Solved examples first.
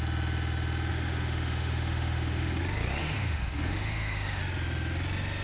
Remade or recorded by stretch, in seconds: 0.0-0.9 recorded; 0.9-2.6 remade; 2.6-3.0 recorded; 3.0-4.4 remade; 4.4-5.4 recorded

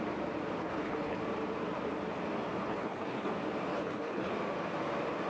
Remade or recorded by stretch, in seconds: 0.0-0.6 recorded; 0.6-1.2 remade; 1.2-2.6 recorded; 2.6-3.3 remade; 3.3-3.7 recorded; 3.7-4.3 remade; 4.3-5.3 recorded

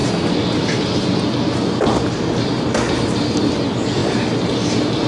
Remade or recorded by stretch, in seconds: 0.0-4.0 recorded; 4.0-5.1 remade

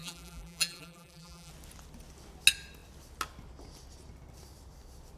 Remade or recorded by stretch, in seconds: 0.0-1.5 remade; 1.5-5.2 recorded